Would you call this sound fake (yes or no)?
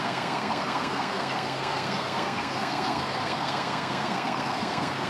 yes